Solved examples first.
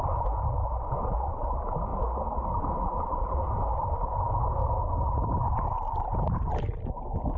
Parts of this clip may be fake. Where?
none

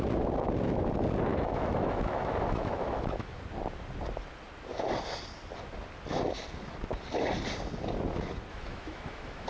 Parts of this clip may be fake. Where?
1.3-3.4 (autoencoder, DAC-VAE); 8.5-9.5

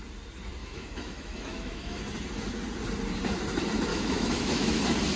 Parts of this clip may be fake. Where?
0.6-2.0 (autoencoder, DAC-VAE); 3.9-4.8

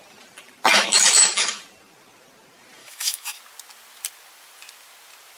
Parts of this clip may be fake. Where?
0.7-1.6 (autoencoder, DAC-VAE); 2.8-3.4